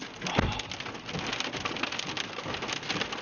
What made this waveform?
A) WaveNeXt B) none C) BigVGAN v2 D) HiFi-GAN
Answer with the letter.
B